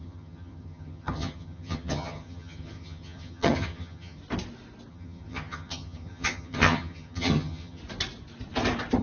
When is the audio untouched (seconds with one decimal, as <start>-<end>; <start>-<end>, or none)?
4.2-4.9; 7.8-9.0